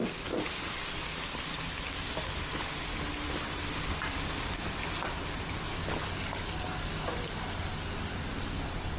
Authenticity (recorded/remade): recorded